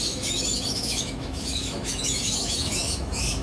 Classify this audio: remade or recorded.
remade